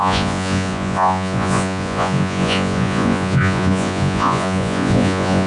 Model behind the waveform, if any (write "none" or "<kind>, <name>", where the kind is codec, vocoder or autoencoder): vocoder, Vocos